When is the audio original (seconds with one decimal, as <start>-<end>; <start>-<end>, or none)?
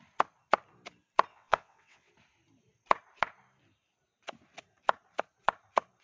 0.0-1.3; 2.1-6.0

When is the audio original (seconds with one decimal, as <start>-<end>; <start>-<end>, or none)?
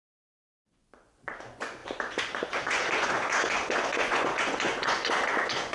none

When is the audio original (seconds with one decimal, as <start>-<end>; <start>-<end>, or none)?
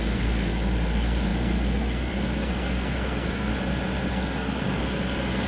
3.5-4.1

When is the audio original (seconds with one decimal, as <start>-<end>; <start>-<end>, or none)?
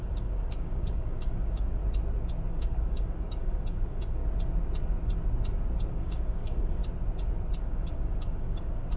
1.8-2.5; 4.2-5.9; 6.8-7.6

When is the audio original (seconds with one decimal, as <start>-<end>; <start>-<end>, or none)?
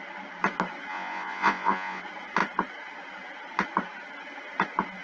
0.0-0.9; 2.0-5.0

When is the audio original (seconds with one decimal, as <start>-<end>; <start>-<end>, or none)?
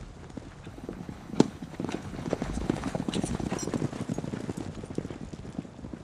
0.0-0.7; 3.5-6.0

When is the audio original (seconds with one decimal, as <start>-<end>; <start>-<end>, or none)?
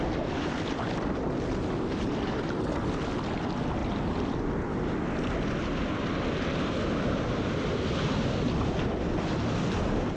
0.0-3.8; 4.7-10.2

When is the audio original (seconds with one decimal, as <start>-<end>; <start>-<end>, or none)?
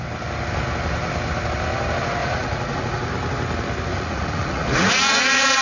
0.0-2.2; 3.1-3.9